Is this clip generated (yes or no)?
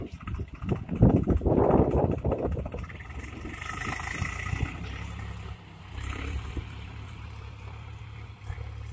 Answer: yes